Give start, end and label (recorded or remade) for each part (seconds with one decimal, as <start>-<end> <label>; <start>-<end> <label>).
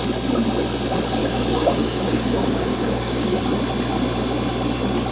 0.0-1.2 recorded; 1.2-3.4 remade; 3.4-5.1 recorded